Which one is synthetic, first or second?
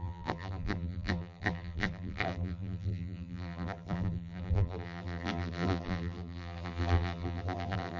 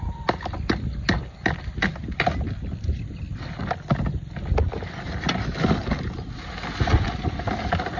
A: first